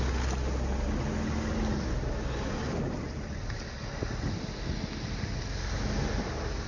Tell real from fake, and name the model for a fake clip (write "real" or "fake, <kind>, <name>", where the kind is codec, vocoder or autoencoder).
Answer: real